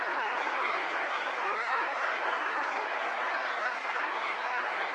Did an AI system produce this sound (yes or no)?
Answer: yes